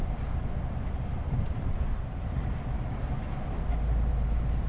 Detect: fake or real real